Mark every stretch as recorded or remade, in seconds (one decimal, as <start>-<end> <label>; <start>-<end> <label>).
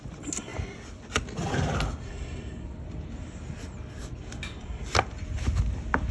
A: 0.0-6.1 recorded